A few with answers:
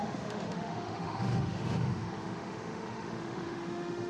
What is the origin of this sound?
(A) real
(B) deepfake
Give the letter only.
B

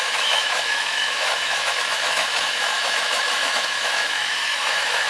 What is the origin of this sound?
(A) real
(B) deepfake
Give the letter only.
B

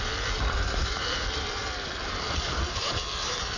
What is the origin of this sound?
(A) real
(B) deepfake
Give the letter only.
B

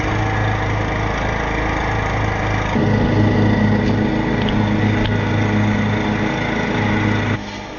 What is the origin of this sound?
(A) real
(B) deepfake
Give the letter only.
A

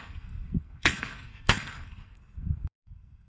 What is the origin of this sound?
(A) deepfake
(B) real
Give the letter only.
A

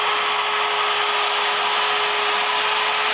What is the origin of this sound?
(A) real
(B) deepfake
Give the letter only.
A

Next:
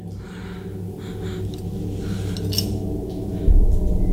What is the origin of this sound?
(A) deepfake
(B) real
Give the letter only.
B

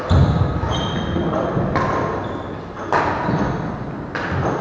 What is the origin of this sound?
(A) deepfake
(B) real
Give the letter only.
B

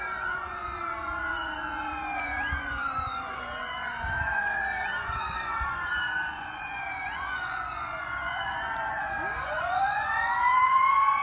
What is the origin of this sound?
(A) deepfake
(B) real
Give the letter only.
A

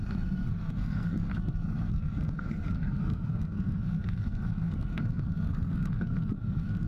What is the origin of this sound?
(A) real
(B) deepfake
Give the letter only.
B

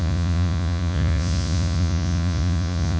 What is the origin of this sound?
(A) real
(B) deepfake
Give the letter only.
B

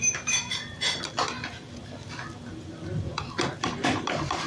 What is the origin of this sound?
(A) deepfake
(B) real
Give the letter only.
B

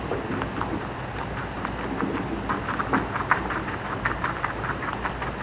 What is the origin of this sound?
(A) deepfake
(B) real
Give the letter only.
B